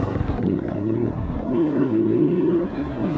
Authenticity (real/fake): fake